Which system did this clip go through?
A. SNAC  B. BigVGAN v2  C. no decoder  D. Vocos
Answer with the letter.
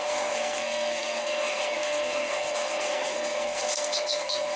A